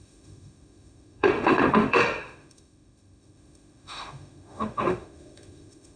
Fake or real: fake